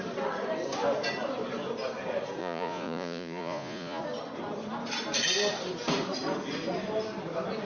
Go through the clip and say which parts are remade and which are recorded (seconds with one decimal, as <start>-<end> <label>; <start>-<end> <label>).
0.0-2.4 recorded; 2.4-4.0 remade; 4.0-7.6 recorded